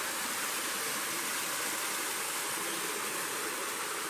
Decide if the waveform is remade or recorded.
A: recorded